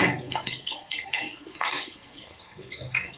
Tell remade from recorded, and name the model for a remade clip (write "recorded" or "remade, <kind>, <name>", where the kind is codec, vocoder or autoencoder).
remade, codec, SNAC